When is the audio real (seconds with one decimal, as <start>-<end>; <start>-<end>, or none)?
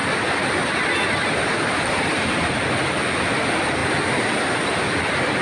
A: 3.2-5.4